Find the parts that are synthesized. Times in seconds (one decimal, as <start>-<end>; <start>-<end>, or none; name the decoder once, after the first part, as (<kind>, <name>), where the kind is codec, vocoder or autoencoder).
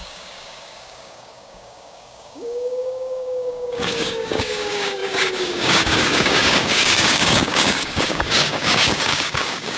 0.0-9.8 (codec, DAC)